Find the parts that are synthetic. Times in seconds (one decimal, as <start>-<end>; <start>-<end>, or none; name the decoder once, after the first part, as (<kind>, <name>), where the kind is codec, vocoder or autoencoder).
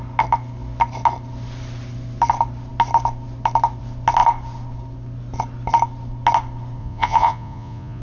6.8-8.0 (vocoder, Vocos)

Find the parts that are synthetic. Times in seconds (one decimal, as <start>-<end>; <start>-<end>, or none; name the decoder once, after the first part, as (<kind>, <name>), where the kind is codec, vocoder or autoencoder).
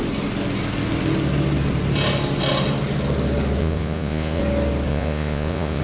3.6-4.4 (vocoder, Vocos); 4.9-5.8